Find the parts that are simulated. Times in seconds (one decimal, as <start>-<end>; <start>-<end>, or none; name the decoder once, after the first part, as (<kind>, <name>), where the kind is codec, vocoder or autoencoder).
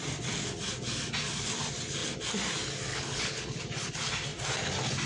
2.9-3.6 (codec, HILCodec)